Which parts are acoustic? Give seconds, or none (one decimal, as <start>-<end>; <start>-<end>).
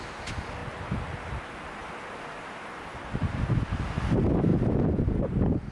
0.0-5.7